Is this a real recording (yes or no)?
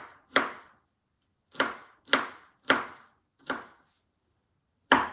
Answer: yes